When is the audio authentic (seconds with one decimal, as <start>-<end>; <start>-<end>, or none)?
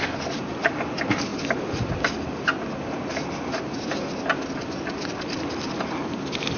0.0-6.6